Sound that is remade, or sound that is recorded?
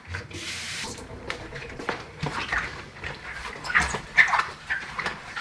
remade